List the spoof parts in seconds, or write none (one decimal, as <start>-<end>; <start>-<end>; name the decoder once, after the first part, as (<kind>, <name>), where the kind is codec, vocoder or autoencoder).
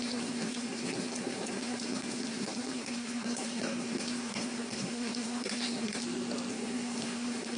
0.0-6.0 (codec, SNAC); 6.5-7.6